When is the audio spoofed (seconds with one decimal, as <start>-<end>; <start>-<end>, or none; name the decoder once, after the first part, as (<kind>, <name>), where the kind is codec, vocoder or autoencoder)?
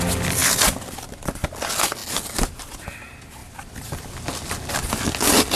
none